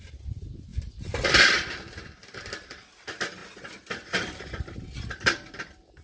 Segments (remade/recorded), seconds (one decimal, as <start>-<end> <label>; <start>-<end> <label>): 0.0-6.0 recorded